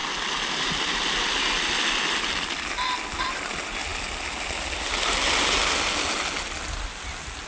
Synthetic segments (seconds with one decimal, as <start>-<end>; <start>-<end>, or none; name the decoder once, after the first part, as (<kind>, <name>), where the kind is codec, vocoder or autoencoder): none